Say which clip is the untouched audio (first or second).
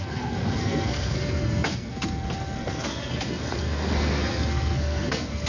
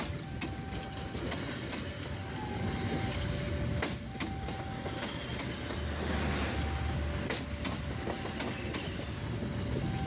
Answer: second